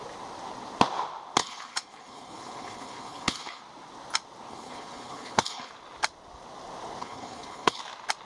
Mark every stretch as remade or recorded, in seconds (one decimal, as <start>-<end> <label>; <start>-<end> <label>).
0.0-1.4 recorded; 1.4-3.6 remade; 3.6-4.5 recorded; 4.5-5.7 remade; 5.7-7.0 recorded; 7.0-7.8 remade; 7.8-8.3 recorded

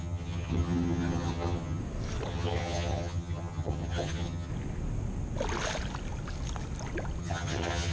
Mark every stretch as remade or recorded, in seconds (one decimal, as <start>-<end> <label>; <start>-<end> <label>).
0.0-1.8 remade; 1.8-2.3 recorded; 2.3-4.5 remade; 4.5-7.2 recorded; 7.2-7.9 remade

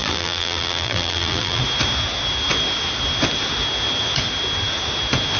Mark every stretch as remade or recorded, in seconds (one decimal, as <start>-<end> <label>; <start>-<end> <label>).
0.0-1.6 remade; 1.6-5.4 recorded

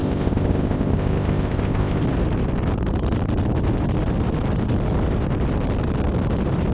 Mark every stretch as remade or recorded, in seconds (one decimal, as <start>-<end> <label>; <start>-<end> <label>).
0.0-2.0 remade; 2.0-6.7 recorded

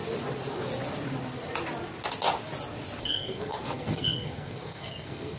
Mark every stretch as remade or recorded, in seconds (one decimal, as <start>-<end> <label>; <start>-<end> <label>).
0.0-3.0 recorded; 3.0-5.4 remade

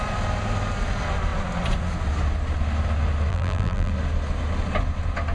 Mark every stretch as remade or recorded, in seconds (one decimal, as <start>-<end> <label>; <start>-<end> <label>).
0.0-3.3 recorded; 3.3-3.9 remade; 3.9-5.3 recorded

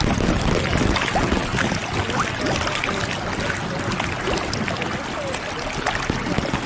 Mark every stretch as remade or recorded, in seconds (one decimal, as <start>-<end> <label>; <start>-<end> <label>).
0.0-6.7 recorded